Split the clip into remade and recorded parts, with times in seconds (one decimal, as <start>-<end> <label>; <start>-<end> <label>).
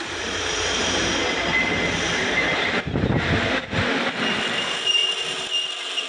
0.0-5.0 remade; 5.0-6.1 recorded